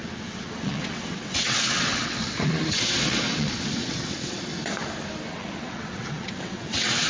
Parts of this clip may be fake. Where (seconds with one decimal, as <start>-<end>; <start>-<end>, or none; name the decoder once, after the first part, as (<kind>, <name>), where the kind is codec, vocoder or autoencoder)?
0.0-4.5 (vocoder, WaveNeXt); 5.3-7.1